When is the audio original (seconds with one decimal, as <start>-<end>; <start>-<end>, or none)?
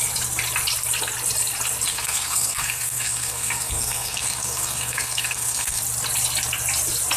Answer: 0.0-1.9; 5.8-7.2